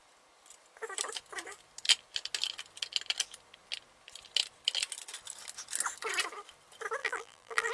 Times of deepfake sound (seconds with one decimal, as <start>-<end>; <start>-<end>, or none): 7.0-7.7